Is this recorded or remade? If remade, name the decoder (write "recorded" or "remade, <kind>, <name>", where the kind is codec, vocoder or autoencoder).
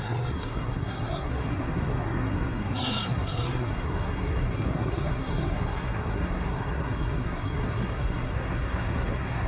remade, codec, SNAC